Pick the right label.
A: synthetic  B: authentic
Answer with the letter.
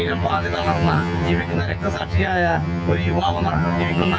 A